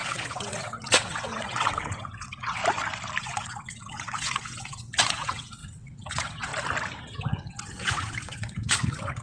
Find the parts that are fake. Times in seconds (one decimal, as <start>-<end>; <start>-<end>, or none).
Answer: 0.0-2.6; 3.2-6.5; 7.0-9.2